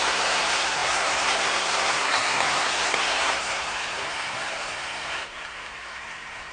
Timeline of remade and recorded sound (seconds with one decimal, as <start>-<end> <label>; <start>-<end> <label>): 0.0-6.5 remade